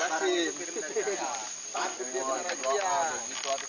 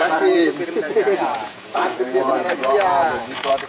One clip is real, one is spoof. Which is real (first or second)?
first